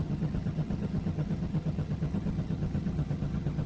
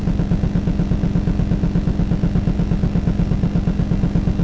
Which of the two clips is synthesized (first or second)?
first